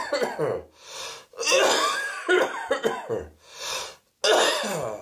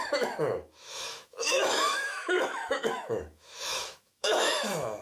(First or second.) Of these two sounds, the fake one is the second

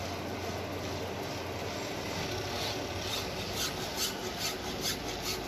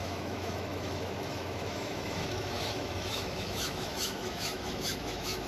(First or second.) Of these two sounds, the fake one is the second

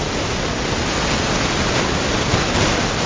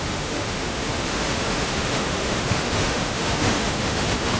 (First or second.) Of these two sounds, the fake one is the second